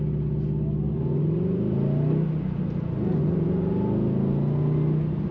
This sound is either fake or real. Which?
real